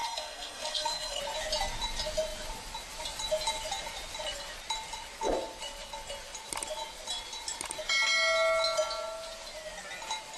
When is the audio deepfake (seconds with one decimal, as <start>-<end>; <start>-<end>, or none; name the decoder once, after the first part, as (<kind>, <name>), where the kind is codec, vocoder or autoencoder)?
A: 0.0-1.2 (codec, SNAC)